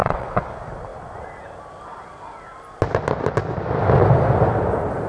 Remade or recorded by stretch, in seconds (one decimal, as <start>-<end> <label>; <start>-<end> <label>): 0.0-0.5 remade; 0.5-5.1 recorded